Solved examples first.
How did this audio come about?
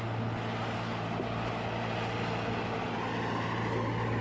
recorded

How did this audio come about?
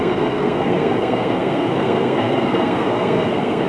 remade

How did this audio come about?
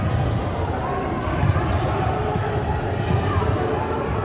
recorded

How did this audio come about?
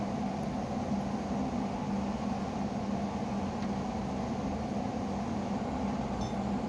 recorded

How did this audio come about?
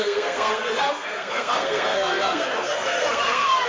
remade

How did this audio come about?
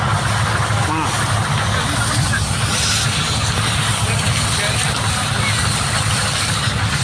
recorded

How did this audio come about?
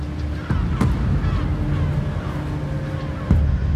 recorded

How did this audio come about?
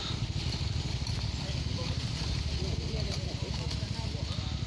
recorded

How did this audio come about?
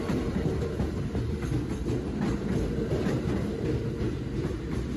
recorded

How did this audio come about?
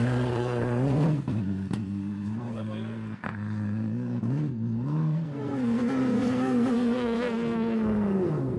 remade